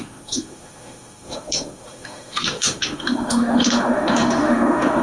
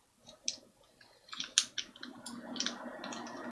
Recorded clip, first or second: second